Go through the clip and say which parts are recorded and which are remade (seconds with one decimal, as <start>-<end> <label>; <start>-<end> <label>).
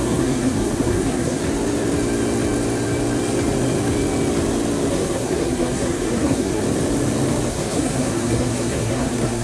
0.0-1.4 remade; 1.4-4.9 recorded; 4.9-6.6 remade; 6.6-7.5 recorded; 7.5-9.4 remade